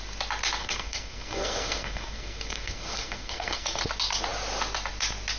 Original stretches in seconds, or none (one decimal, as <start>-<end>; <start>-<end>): 0.0-0.6; 3.8-5.4